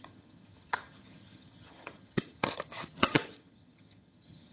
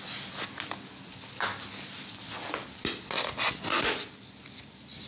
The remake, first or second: first